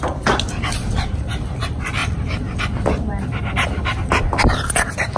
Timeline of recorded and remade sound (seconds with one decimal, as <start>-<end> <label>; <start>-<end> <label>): 0.0-2.0 recorded; 2.0-2.6 remade; 2.6-5.2 recorded